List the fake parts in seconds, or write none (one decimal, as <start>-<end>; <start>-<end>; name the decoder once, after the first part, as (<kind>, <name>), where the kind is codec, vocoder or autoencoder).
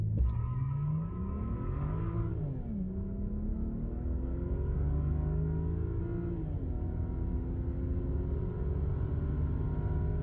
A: 0.4-2.3 (codec, DAC); 3.5-6.0